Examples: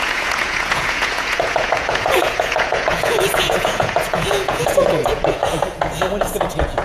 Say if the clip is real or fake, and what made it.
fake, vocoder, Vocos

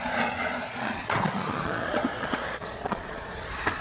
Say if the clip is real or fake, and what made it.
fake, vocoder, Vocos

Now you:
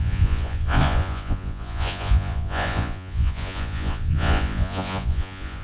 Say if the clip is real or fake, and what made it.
fake, vocoder, Vocos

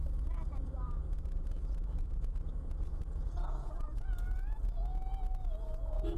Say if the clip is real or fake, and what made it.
fake, vocoder, Vocos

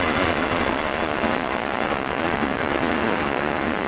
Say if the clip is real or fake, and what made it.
fake, vocoder, Vocos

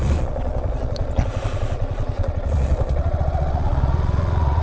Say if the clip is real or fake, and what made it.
fake, vocoder, Vocos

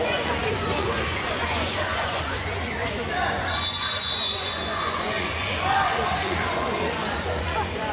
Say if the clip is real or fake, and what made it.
fake, vocoder, Vocos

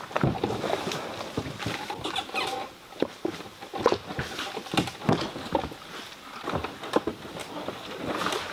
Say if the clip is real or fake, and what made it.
real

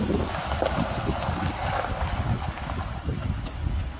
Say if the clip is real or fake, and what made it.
real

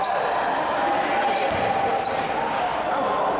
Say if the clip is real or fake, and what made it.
real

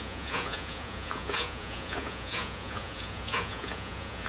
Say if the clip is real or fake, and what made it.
fake, vocoder, Vocos